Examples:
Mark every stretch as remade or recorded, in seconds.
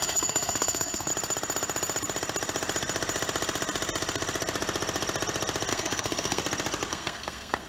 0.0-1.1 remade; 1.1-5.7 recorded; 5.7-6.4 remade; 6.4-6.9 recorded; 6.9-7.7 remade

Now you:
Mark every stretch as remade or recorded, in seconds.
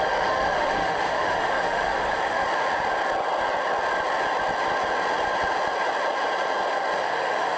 0.0-2.4 remade; 2.4-7.0 recorded; 7.0-7.6 remade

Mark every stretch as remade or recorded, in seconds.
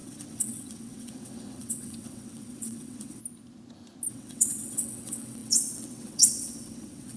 0.0-3.2 remade; 3.2-4.1 recorded; 4.1-7.2 remade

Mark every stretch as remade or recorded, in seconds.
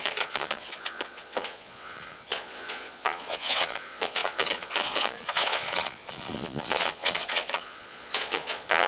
0.0-8.9 remade